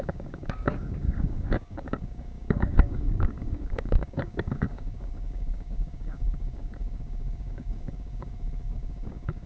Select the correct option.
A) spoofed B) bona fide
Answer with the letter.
A